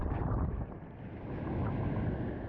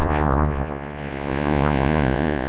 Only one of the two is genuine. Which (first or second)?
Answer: first